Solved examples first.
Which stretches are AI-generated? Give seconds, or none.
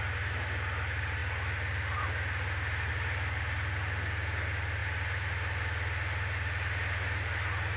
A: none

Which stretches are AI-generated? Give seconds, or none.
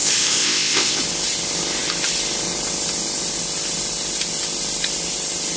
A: 0.0-1.0 (codec, ZipCodec)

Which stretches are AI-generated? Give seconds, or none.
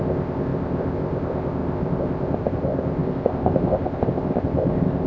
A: 0.0-5.1 (codec, ZipCodec)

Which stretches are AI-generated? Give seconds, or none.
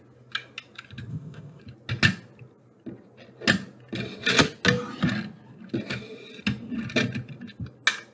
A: 1.1-1.6 (codec, ZipCodec)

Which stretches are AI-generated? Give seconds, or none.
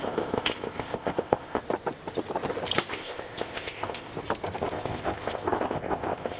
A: 0.0-1.6 (codec, ZipCodec); 2.9-4.1; 4.7-6.4